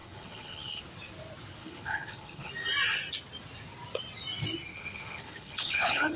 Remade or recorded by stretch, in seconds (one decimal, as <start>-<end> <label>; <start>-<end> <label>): 0.0-0.8 remade; 0.8-1.6 recorded; 1.6-2.5 remade; 2.5-4.7 recorded; 4.7-6.2 remade